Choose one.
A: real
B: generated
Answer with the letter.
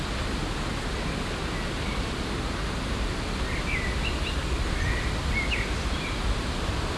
A